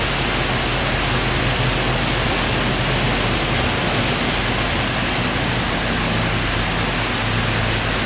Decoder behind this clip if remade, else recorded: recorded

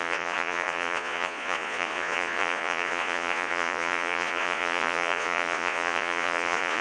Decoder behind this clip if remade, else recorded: remade, vocoder, Vocos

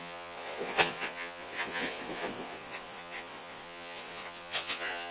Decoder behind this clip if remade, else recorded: remade, vocoder, Vocos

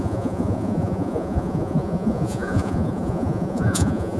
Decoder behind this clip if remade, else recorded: remade, vocoder, Vocos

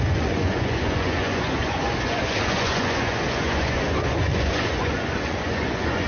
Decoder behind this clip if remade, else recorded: remade, vocoder, Vocos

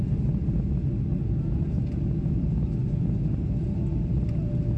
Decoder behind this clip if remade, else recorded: recorded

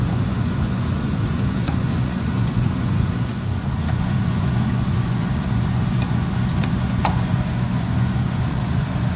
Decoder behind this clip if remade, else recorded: remade, vocoder, Vocos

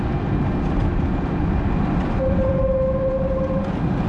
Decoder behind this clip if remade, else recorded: recorded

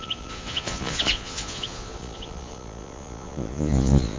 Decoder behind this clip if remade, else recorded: remade, vocoder, Vocos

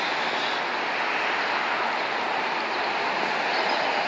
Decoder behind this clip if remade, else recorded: recorded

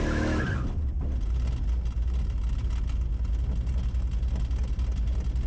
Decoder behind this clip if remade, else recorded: recorded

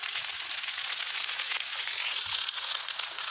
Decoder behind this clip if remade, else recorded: remade, vocoder, Vocos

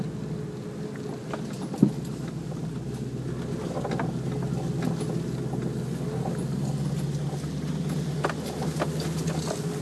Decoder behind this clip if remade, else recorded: recorded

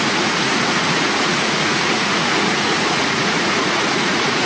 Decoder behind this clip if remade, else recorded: remade, vocoder, Vocos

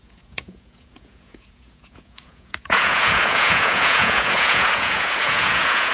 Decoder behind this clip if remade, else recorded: remade, vocoder, Vocos